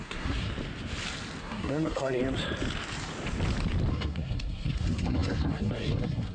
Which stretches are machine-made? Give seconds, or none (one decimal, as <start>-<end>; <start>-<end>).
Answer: 0.0-0.5; 1.4-2.2; 3.9-6.3